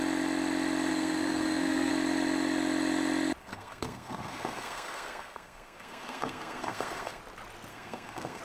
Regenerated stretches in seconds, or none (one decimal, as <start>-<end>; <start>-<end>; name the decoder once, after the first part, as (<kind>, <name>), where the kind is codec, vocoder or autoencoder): 0.9-1.9 (codec, SNAC); 3.4-7.2; 7.7-8.4